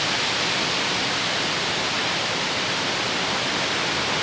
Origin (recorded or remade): recorded